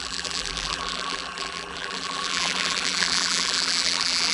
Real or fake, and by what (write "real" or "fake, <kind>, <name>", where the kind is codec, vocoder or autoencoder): fake, vocoder, BigVGAN v2